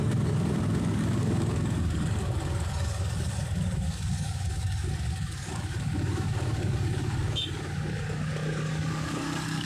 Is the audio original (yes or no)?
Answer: no